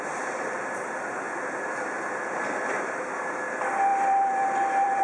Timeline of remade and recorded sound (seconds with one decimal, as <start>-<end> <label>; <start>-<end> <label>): 0.0-3.9 recorded; 3.9-5.0 remade